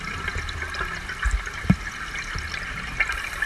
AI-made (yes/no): no